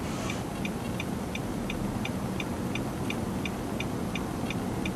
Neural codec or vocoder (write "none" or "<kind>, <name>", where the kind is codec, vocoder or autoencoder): none